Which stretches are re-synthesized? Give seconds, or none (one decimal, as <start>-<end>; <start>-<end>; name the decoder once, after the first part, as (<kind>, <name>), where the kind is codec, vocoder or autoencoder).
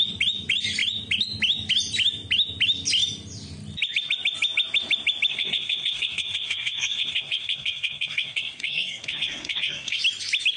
5.3-10.0 (codec, SNAC)